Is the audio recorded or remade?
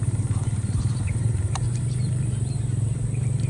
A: remade